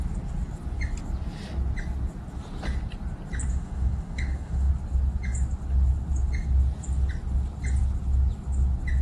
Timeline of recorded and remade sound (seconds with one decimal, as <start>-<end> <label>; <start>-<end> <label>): 0.0-3.5 recorded; 3.5-4.7 remade; 4.7-9.0 recorded